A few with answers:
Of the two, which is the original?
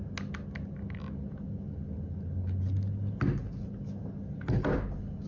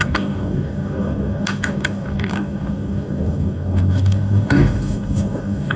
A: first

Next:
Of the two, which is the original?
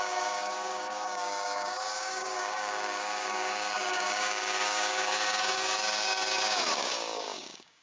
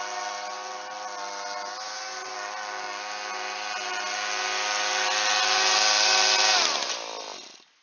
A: second